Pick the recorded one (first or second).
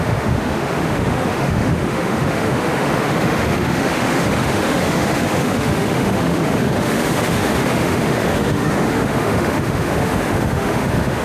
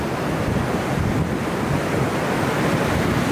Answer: second